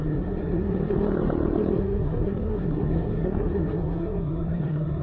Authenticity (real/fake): fake